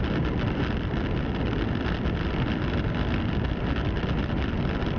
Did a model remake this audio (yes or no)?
yes